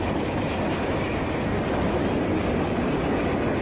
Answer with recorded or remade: recorded